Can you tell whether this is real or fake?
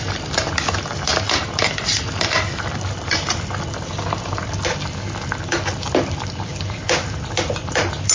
real